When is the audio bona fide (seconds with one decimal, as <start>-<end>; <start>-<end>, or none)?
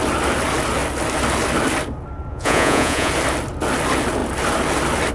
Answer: 0.0-2.3; 3.1-5.1